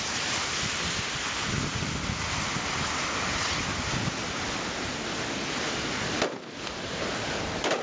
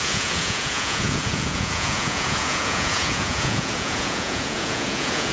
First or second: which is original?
first